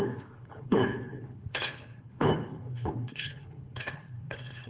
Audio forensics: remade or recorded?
remade